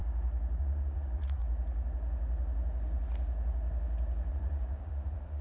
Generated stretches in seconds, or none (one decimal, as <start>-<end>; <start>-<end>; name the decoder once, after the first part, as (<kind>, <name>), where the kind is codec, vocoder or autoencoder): 0.6-1.4 (vocoder, Vocos); 4.3-5.4

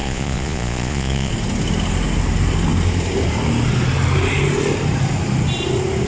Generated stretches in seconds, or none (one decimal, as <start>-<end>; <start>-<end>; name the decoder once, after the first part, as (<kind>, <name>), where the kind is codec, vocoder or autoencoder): 0.0-1.3 (vocoder, Vocos)

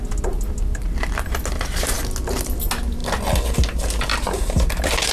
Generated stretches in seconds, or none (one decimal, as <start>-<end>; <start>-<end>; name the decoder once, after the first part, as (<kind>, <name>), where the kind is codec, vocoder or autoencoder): none

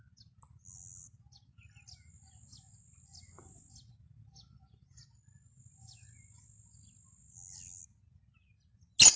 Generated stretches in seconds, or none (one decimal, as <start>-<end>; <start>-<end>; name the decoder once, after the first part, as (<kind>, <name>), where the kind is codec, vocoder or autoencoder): none

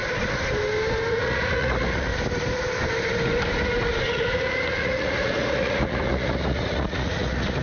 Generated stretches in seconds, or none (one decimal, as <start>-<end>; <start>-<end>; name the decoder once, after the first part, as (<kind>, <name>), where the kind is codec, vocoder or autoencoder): 1.1-2.1 (vocoder, Vocos); 4.1-7.6

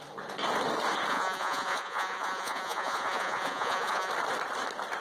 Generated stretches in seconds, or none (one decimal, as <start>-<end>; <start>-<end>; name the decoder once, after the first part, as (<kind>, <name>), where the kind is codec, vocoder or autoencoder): 1.1-4.1 (vocoder, Vocos)

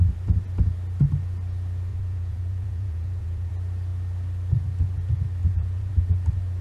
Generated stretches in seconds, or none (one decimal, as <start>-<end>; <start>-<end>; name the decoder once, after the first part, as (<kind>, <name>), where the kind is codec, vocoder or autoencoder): 1.9-3.5 (vocoder, Vocos); 5.4-5.9

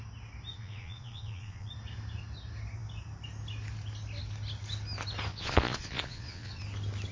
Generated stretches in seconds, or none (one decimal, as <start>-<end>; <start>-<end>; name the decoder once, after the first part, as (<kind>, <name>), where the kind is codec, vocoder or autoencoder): 0.5-1.7 (vocoder, Vocos); 5.3-6.6